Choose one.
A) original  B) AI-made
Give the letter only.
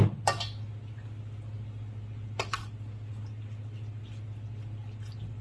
A